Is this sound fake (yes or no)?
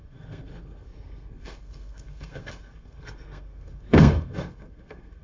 yes